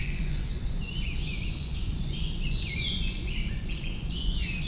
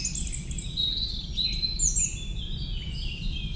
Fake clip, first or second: first